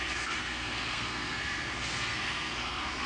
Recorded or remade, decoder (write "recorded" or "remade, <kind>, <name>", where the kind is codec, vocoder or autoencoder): remade, codec, SNAC